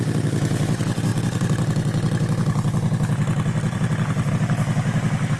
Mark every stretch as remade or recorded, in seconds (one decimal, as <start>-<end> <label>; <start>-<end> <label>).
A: 0.0-5.4 recorded